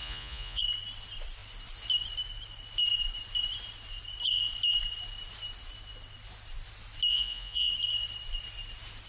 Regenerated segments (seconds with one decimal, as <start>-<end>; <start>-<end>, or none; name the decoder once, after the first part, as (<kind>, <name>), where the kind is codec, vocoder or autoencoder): 0.0-0.6 (vocoder, Vocos); 7.1-7.7